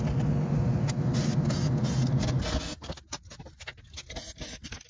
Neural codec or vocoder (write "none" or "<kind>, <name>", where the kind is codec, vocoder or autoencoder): none